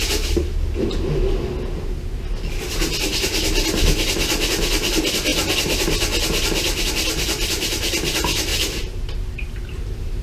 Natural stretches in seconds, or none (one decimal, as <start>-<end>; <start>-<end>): 0.0-8.5